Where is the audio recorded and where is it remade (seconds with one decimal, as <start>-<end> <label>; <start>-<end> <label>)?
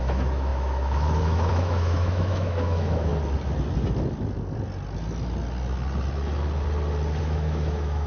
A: 0.0-3.1 remade; 3.1-7.2 recorded; 7.2-8.1 remade